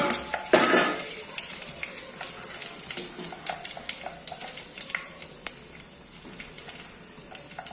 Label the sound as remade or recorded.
recorded